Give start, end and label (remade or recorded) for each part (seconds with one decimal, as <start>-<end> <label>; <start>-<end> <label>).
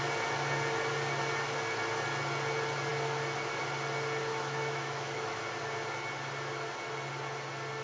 0.0-4.3 recorded; 4.3-5.4 remade; 5.4-7.8 recorded